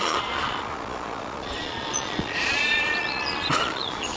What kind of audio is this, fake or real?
fake